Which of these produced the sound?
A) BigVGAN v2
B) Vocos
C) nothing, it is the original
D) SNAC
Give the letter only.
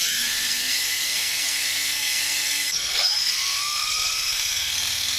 D